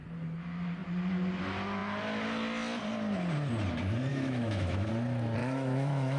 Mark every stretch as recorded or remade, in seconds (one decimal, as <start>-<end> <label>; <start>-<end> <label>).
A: 0.0-4.1 recorded; 4.1-4.9 remade; 4.9-5.4 recorded; 5.4-6.2 remade